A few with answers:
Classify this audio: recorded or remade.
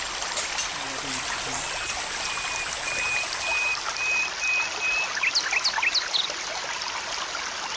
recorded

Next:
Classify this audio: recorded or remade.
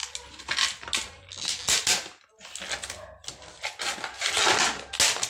recorded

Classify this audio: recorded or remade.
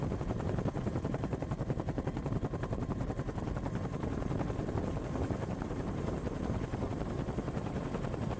remade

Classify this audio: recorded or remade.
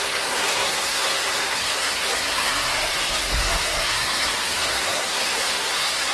remade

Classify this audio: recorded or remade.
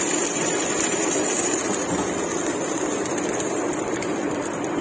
remade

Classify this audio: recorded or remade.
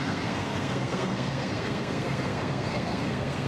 remade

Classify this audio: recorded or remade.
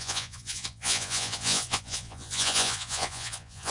remade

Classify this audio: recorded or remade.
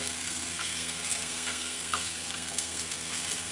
remade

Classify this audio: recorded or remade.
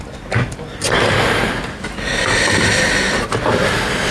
recorded